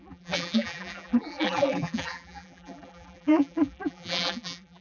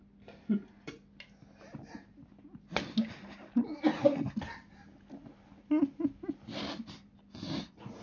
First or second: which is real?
second